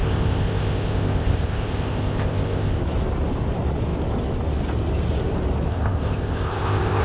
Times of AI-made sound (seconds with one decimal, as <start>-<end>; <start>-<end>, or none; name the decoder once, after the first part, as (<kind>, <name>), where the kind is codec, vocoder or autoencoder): 0.0-2.8 (codec, ZipCodec); 5.7-7.0